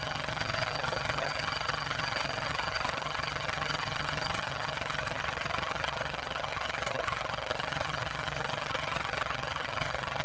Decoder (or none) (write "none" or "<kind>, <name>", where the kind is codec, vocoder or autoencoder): vocoder, HiFi-GAN